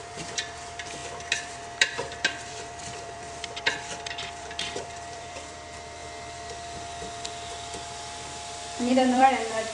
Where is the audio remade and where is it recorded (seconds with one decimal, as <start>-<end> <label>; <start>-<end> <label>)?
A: 0.0-6.0 remade; 6.0-8.9 recorded; 8.9-9.7 remade